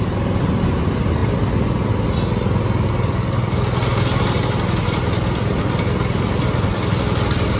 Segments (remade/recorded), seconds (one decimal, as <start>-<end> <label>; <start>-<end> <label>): 0.0-7.6 recorded